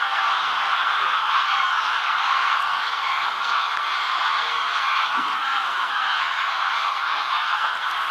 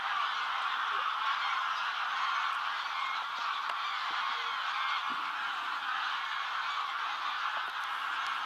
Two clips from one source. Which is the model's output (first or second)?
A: first